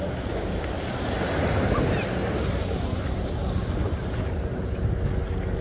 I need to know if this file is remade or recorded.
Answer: recorded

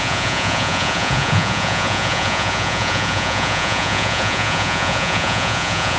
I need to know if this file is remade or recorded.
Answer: remade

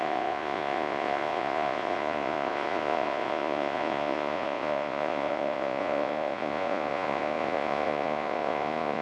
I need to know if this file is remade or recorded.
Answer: remade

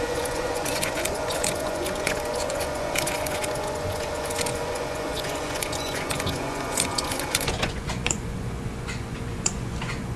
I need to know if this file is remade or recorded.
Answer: remade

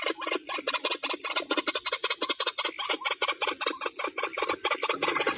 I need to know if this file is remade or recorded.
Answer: recorded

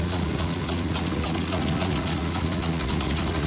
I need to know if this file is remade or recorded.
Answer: remade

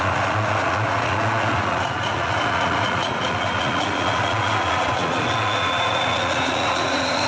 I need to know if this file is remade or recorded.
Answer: remade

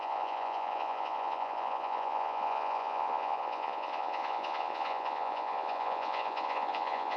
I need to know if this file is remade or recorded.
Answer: remade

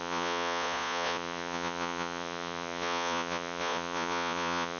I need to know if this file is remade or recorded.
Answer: remade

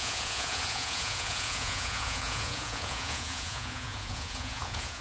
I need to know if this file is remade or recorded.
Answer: remade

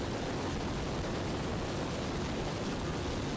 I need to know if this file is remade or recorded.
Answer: recorded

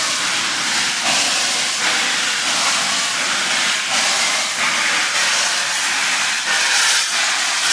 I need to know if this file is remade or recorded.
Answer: recorded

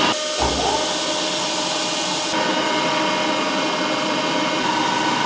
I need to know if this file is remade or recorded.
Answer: recorded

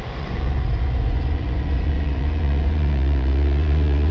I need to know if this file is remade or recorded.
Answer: remade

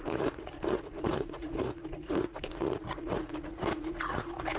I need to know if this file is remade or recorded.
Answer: remade